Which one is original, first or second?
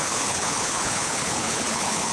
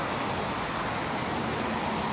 second